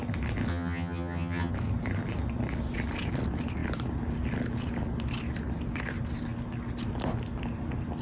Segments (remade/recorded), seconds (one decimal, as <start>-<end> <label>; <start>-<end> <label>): 0.0-0.5 recorded; 0.5-1.5 remade; 1.5-8.0 recorded